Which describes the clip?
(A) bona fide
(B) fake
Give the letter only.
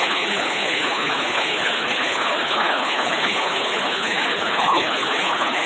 B